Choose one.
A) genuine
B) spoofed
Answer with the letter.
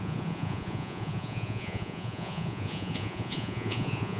B